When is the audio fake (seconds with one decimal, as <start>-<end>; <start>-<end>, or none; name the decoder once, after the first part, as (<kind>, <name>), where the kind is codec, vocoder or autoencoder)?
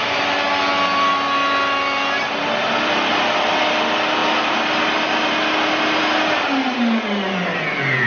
none